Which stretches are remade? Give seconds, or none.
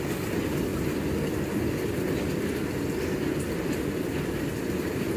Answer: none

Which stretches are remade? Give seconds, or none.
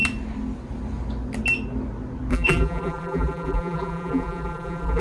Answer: 2.3-5.0 (vocoder, BigVGAN v2)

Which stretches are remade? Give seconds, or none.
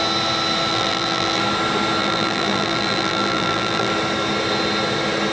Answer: 0.7-1.4 (vocoder, BigVGAN v2); 2.0-3.9